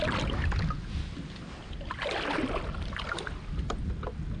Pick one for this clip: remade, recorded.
recorded